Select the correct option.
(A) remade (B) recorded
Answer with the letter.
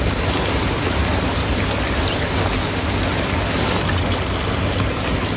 B